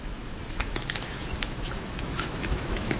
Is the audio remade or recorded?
remade